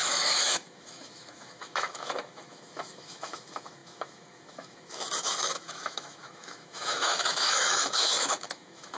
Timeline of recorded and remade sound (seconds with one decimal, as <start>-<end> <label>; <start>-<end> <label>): 0.0-9.0 remade